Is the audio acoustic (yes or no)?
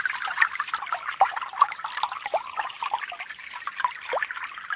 yes